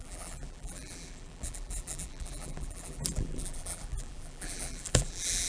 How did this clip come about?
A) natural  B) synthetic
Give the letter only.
B